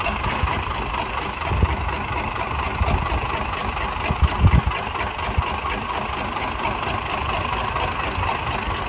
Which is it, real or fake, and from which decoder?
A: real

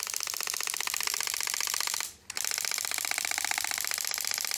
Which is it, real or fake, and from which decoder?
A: real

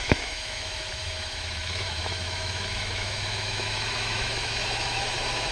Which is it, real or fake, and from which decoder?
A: fake, autoencoder, DAC-VAE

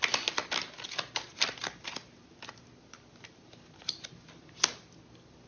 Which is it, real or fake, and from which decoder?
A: real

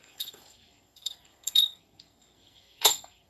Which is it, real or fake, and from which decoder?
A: fake, codec, SNAC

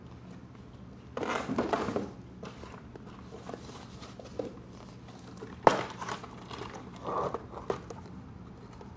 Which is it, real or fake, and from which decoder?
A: real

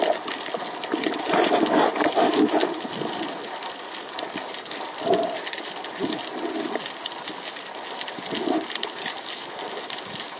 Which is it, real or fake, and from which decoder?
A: real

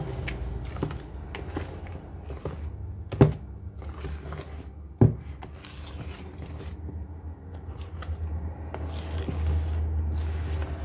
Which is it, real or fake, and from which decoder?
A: real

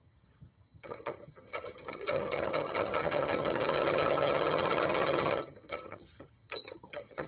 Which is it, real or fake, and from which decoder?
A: fake, vocoder, HiFi-GAN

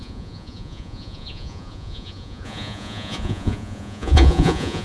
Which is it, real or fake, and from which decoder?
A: fake, vocoder, Vocos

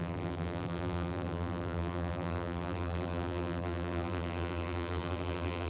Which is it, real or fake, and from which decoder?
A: fake, vocoder, BigVGAN v2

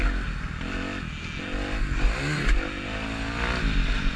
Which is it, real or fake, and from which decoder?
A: real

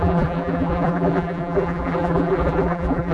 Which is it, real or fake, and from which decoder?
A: fake, vocoder, BigVGAN v2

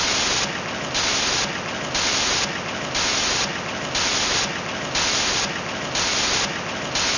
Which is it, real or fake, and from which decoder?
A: real